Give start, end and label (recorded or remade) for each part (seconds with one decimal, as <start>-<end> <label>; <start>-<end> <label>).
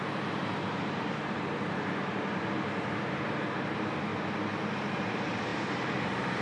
0.0-4.1 remade; 4.1-4.6 recorded; 4.6-6.4 remade